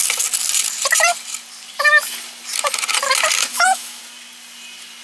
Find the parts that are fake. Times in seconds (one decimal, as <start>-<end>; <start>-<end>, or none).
3.5-4.0